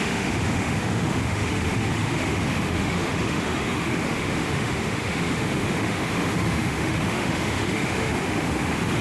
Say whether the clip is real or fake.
fake